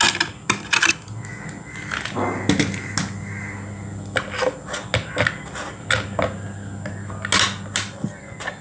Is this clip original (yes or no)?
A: yes